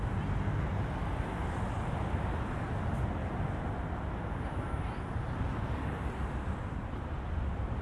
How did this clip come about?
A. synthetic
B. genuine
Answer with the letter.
B